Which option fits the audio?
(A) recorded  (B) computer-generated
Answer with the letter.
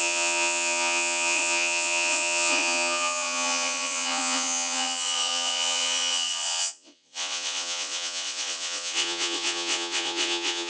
B